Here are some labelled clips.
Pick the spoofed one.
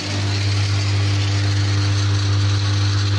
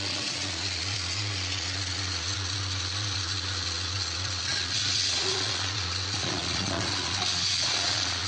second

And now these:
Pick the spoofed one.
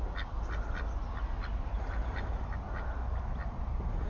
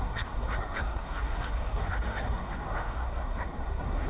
second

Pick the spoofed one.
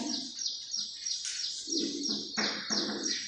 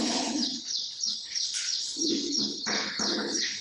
second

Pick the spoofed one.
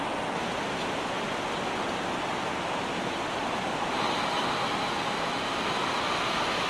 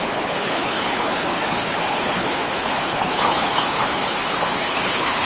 second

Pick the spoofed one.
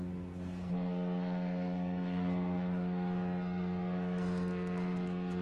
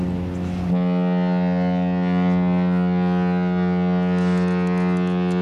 first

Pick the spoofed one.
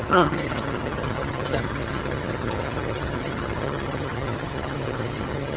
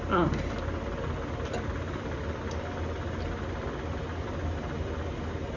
first